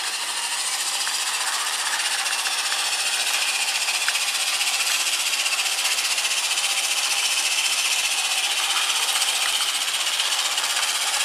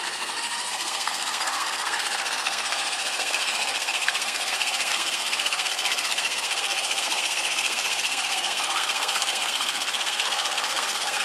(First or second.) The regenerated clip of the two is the second